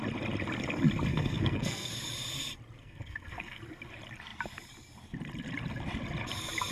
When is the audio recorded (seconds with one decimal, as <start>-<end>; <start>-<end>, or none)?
0.0-1.1; 1.9-2.8; 3.6-6.7